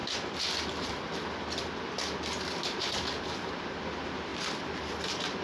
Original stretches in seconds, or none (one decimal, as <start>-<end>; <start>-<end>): 0.0-5.4